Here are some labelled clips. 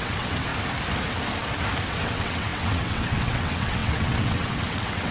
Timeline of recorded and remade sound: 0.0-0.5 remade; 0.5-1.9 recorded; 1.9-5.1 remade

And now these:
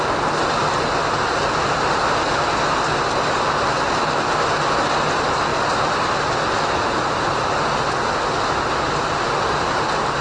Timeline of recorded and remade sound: 0.0-10.2 recorded